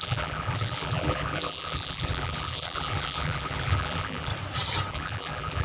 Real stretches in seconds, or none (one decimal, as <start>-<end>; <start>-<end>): 4.3-4.9